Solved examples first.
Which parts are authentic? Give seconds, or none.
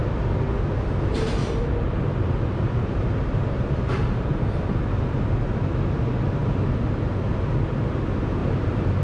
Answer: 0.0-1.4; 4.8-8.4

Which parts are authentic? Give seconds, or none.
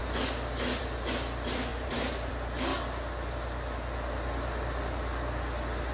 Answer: 0.0-1.7; 2.3-5.9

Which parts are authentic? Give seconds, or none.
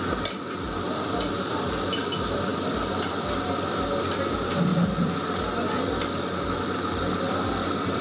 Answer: 0.0-8.0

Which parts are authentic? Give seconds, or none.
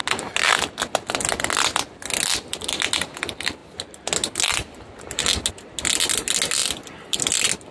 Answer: 0.0-6.6; 7.2-7.7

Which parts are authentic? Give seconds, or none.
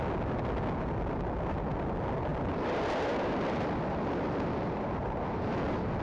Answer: 0.0-2.3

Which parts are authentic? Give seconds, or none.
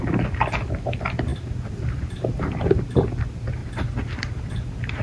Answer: 0.0-1.3; 3.2-3.6; 4.5-5.0